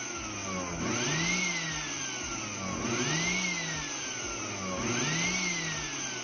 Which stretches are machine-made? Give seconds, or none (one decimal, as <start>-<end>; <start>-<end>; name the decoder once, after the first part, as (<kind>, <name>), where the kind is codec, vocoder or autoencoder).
none